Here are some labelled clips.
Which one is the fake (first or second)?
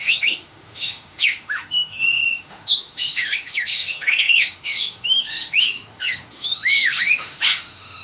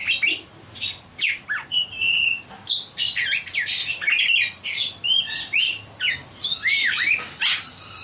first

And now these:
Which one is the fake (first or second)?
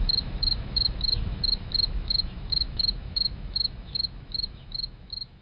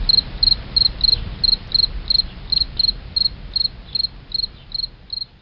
first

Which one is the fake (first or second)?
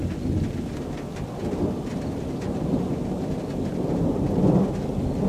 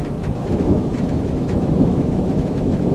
second